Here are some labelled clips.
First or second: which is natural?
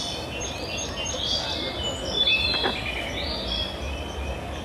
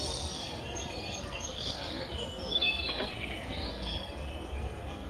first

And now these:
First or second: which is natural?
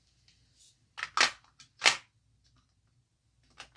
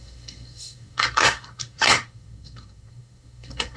first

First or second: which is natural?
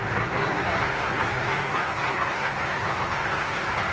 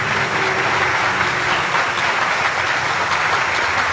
second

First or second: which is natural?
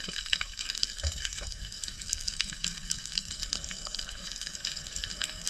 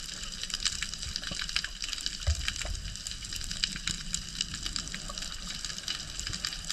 second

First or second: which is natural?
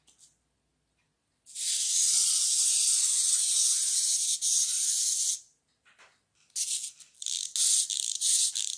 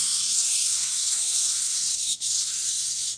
first